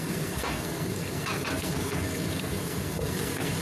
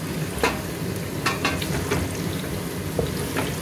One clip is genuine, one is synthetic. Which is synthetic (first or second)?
first